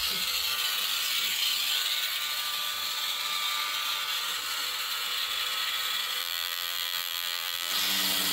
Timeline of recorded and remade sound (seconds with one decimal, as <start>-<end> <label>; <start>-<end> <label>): 0.0-6.2 recorded; 6.2-7.7 remade; 7.7-8.3 recorded